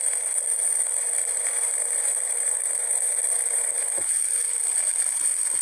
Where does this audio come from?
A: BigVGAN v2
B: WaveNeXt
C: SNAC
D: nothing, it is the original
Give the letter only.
A